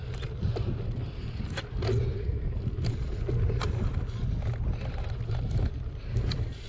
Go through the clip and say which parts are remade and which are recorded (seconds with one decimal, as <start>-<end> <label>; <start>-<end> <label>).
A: 0.0-6.7 recorded